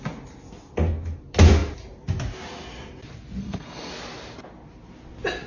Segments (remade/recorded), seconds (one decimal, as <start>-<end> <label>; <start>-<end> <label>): 0.0-3.4 recorded; 3.4-3.9 remade; 3.9-5.5 recorded